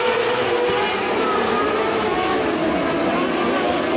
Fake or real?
real